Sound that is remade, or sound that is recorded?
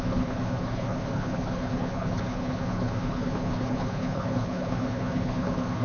remade